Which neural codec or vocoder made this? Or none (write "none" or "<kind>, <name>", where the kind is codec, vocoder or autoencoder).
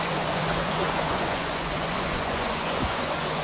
vocoder, Vocos